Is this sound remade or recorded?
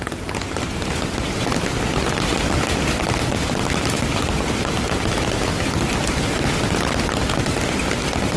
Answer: recorded